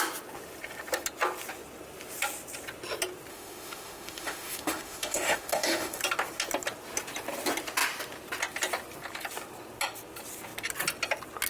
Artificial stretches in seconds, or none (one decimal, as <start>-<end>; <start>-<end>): 3.3-6.0